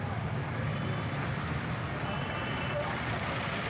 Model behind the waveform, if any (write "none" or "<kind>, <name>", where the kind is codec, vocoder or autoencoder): none